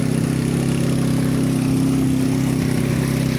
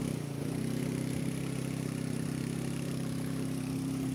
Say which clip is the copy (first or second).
second